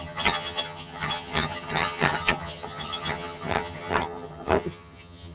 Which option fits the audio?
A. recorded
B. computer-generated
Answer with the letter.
B